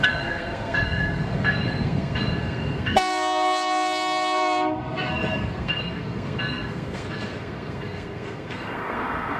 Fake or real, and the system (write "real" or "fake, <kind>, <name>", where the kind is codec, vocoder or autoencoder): fake, codec, SNAC